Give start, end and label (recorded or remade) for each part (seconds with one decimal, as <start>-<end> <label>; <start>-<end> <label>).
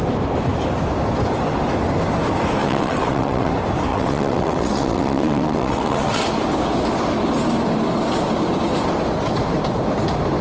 0.0-2.6 recorded; 2.6-3.5 remade; 3.5-3.9 recorded; 3.9-6.2 remade; 6.2-10.4 recorded